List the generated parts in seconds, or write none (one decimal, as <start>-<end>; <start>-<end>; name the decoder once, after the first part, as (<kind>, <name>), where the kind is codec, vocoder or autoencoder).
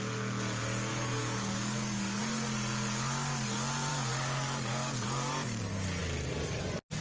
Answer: 0.9-2.2 (codec, DAC); 3.9-5.6